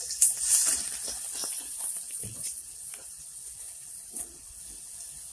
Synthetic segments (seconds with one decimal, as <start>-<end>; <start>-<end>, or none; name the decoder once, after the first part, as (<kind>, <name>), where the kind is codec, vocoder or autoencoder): 1.4-4.6 (vocoder, Vocos)

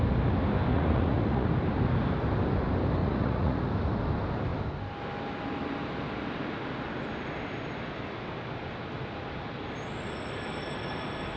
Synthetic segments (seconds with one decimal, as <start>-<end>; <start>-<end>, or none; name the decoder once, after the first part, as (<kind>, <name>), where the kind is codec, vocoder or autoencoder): 0.7-1.5 (vocoder, Vocos); 3.0-3.7

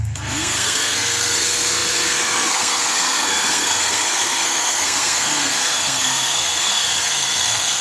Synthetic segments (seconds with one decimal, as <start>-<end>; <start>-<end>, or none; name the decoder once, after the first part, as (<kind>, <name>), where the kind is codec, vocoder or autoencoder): 0.0-7.8 (codec, SNAC)

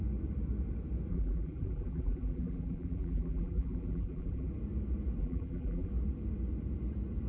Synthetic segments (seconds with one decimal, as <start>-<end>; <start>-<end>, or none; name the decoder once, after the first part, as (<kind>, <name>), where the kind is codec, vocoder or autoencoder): 1.1-4.5 (vocoder, BigVGAN v2); 5.2-5.9

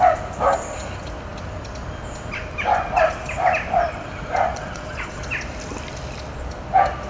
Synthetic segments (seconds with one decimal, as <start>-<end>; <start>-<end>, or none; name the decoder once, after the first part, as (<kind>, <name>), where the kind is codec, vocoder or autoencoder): 4.5-5.2 (vocoder, Vocos)

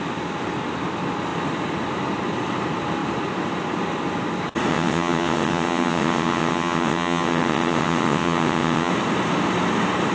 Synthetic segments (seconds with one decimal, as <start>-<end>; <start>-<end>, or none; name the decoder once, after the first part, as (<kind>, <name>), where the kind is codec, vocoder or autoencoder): 4.7-8.9 (vocoder, WaveNeXt)

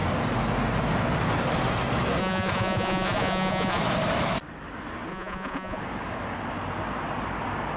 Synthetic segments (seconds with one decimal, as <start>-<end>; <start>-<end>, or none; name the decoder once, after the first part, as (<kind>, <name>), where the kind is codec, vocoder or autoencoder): 2.2-3.8 (vocoder, Vocos); 5.1-5.8

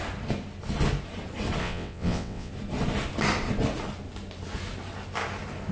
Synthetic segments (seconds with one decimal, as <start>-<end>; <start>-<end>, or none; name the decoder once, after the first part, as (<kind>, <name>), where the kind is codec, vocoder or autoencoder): 1.6-2.5 (vocoder, WaveNeXt)